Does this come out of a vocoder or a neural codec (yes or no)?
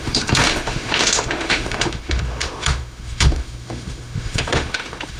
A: yes